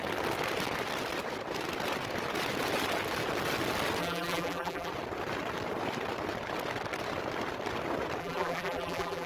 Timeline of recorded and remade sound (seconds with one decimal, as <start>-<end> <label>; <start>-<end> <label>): 0.0-4.0 recorded; 4.0-4.9 remade; 4.9-8.2 recorded; 8.2-9.3 remade